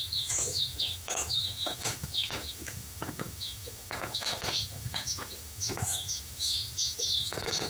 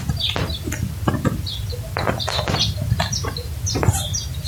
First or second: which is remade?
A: first